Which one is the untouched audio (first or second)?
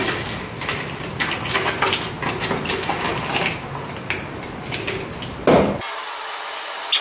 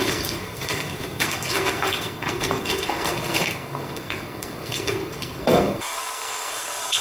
first